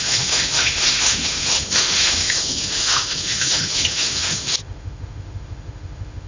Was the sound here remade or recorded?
remade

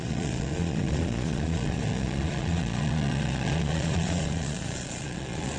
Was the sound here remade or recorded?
remade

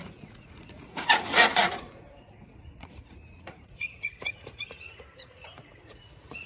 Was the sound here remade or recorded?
remade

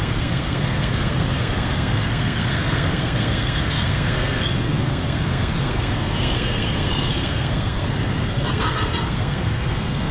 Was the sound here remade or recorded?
remade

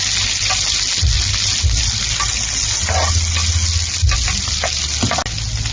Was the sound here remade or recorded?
recorded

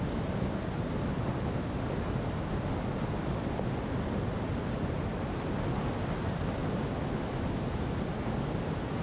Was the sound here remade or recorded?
recorded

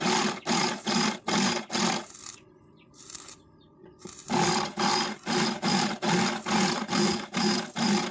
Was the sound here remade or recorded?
recorded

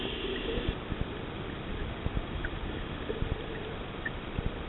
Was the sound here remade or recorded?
recorded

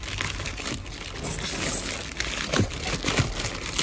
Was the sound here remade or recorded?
recorded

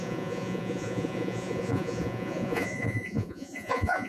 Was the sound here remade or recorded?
remade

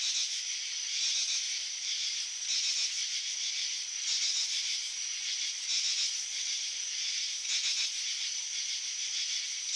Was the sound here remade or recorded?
recorded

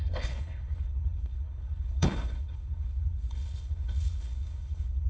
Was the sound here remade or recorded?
remade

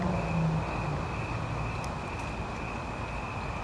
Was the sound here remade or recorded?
recorded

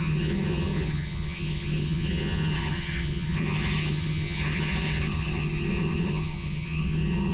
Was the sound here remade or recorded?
remade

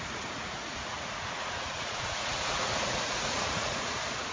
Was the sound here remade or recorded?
remade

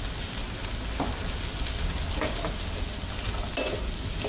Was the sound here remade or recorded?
recorded